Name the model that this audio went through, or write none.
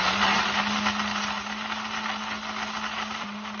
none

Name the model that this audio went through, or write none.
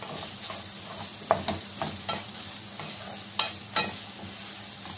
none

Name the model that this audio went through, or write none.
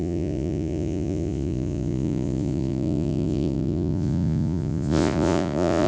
vocoder, Vocos